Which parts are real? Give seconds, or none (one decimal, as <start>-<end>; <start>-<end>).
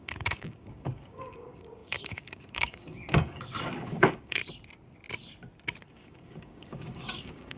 4.4-5.9